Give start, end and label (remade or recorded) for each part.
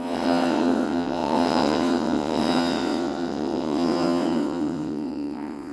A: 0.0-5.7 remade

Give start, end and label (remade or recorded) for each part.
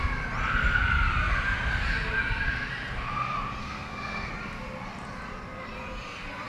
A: 0.0-3.6 recorded; 3.6-4.3 remade; 4.3-6.5 recorded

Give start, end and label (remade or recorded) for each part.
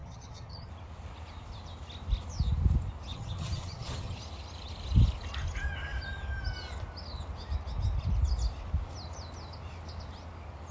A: 0.0-0.7 remade; 0.7-3.1 recorded; 3.1-4.2 remade; 4.2-10.7 recorded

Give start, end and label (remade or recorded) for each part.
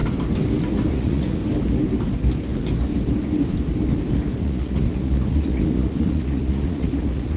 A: 0.0-0.9 recorded; 0.9-1.4 remade; 1.4-4.4 recorded; 4.4-7.4 remade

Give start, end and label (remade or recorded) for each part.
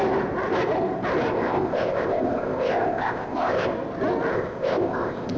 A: 0.0-1.3 recorded; 1.3-3.7 remade; 3.7-4.3 recorded; 4.3-5.4 remade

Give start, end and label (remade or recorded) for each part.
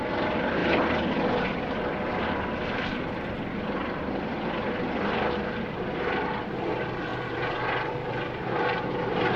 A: 0.0-0.6 recorded; 0.6-5.8 remade; 5.8-9.4 recorded